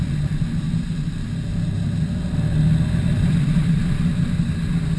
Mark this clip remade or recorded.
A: recorded